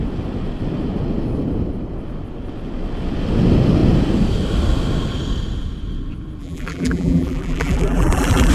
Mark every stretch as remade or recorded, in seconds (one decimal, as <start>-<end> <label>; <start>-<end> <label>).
0.0-6.4 recorded; 6.4-8.5 remade